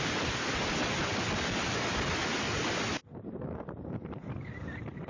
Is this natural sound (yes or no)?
yes